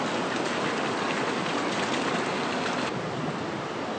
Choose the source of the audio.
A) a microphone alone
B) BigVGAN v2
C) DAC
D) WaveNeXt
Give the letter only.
A